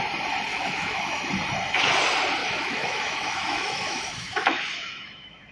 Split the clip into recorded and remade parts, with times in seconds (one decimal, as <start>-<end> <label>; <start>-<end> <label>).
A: 0.0-0.5 recorded; 0.5-1.3 remade; 1.3-2.4 recorded; 2.4-5.5 remade